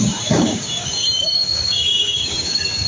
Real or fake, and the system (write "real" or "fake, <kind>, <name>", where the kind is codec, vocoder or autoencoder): fake, codec, DAC